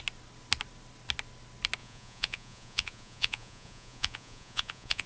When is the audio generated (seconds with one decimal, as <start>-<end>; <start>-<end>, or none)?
1.8-5.1